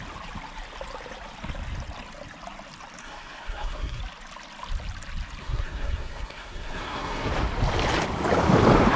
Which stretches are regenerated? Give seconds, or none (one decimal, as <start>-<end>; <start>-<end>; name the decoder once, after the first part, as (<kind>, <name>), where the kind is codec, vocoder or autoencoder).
3.0-4.0 (codec, SNAC); 5.4-7.3